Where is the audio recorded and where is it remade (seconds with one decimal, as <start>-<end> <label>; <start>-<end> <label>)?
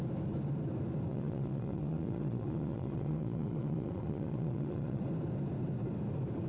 0.0-1.1 recorded; 1.1-5.0 remade; 5.0-6.5 recorded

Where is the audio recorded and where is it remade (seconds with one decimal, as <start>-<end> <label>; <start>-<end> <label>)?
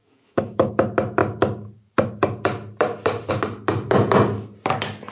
0.0-0.7 remade; 0.7-5.1 recorded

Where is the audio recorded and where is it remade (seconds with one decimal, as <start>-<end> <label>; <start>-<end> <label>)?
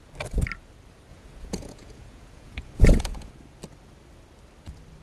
0.0-1.1 recorded; 1.1-3.3 remade; 3.3-5.0 recorded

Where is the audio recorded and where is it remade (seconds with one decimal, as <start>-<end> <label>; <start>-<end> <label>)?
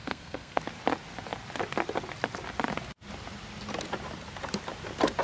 0.0-0.6 remade; 0.6-5.2 recorded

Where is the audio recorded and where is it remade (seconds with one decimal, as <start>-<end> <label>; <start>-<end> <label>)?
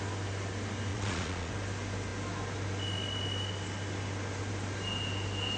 0.0-0.9 recorded; 0.9-1.5 remade; 1.5-5.6 recorded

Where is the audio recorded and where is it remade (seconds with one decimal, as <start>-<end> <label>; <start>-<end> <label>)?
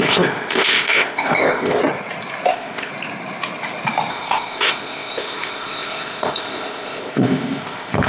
0.0-1.8 remade; 1.8-2.5 recorded; 2.5-2.9 remade; 2.9-4.1 recorded; 4.1-8.1 remade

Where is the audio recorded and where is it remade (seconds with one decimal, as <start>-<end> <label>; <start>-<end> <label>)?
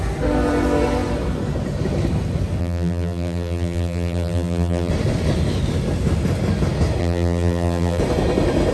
0.0-2.6 recorded; 2.6-4.9 remade; 4.9-7.0 recorded; 7.0-8.0 remade; 8.0-8.7 recorded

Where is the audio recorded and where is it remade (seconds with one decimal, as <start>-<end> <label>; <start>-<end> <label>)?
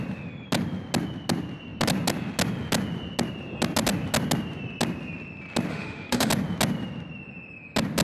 0.0-5.7 recorded; 5.7-6.3 remade; 6.3-8.0 recorded